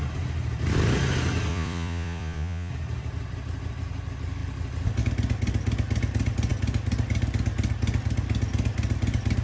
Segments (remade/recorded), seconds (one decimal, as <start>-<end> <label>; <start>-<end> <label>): 0.0-1.5 recorded; 1.5-2.7 remade; 2.7-9.4 recorded